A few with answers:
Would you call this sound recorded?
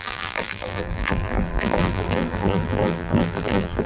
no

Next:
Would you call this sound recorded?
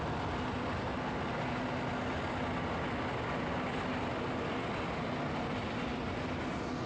yes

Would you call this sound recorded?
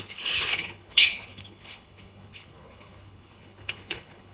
no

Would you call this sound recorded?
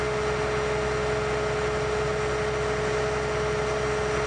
yes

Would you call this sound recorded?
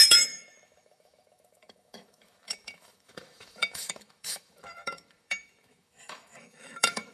no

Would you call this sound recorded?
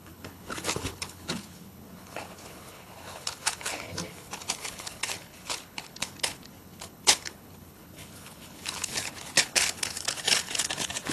no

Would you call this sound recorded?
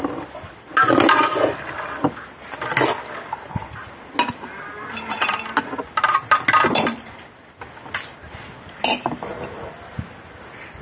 yes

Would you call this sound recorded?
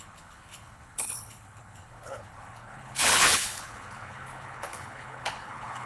no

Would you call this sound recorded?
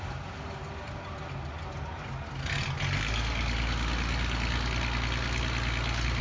yes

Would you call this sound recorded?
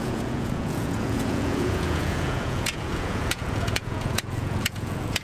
no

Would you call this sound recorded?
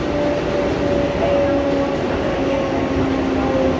yes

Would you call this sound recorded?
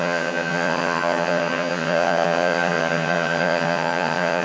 no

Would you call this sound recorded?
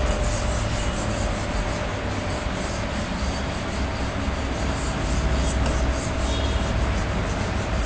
yes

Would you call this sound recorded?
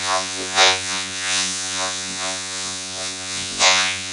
no